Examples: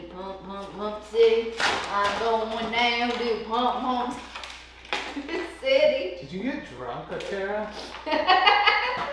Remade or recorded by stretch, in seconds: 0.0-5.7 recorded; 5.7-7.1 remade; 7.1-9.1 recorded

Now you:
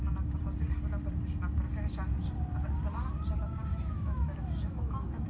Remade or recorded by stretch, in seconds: 0.0-3.7 recorded; 3.7-5.3 remade

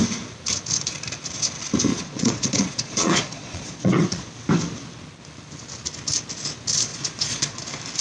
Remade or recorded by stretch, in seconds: 0.0-1.9 recorded; 1.9-4.3 remade; 4.3-6.9 recorded; 6.9-7.6 remade; 7.6-8.0 recorded

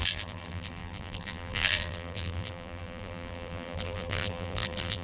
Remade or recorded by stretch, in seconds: 0.0-5.0 remade